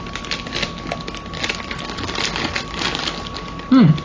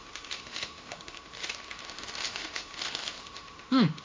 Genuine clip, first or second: first